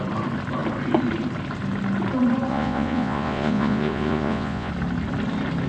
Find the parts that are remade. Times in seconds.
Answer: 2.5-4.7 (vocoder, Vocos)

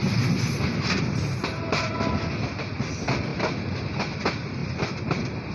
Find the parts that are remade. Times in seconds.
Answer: none